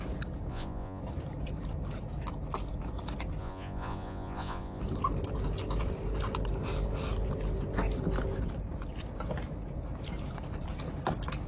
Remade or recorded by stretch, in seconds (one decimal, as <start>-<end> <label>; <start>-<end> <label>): 0.0-0.5 recorded; 0.5-1.0 remade; 1.0-3.4 recorded; 3.4-4.8 remade; 4.8-11.5 recorded

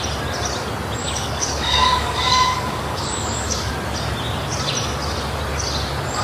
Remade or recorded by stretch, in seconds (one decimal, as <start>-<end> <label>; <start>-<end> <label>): 0.0-1.0 recorded; 1.0-3.7 remade; 3.7-6.2 recorded

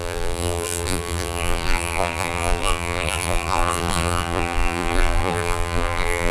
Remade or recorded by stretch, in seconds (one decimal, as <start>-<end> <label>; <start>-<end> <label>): 0.0-6.3 remade

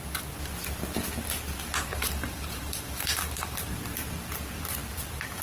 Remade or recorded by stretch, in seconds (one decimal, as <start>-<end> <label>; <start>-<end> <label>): 0.0-1.9 recorded; 1.9-3.7 remade; 3.7-5.4 recorded

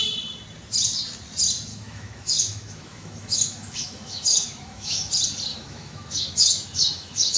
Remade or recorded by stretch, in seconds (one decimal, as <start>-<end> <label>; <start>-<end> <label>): 0.0-1.7 recorded; 1.7-5.1 remade; 5.1-5.5 recorded; 5.5-7.4 remade

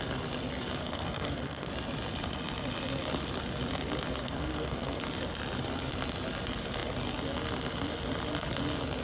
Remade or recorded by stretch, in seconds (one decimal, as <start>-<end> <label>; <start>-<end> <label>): 0.0-0.8 recorded; 0.8-1.7 remade; 1.7-4.2 recorded; 4.2-5.0 remade; 5.0-9.0 recorded

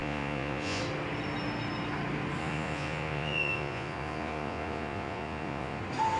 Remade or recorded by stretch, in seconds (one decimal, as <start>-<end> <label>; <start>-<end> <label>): 0.0-0.8 remade; 0.8-2.4 recorded; 2.4-5.8 remade; 5.8-6.2 recorded

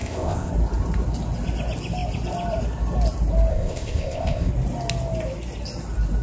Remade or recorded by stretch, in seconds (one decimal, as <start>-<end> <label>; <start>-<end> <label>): 0.0-0.5 remade; 0.5-3.5 recorded; 3.5-4.5 remade; 4.5-6.2 recorded